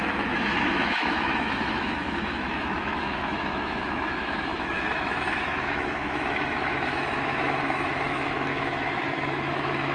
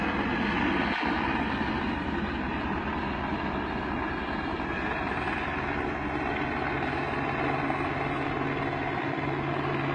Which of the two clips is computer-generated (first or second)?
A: first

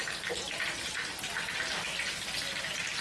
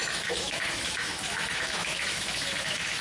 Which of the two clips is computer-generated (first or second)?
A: second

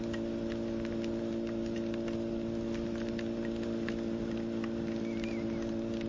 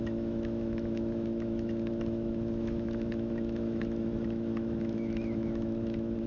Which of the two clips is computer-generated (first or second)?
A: second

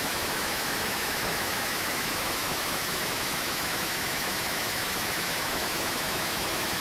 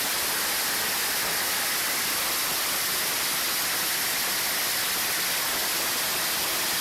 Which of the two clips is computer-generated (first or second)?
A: first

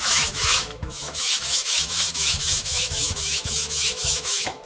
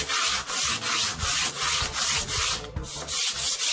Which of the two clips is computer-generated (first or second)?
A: first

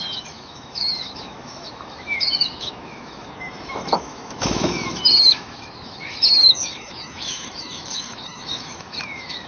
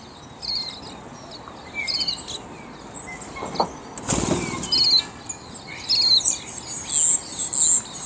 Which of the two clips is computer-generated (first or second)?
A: first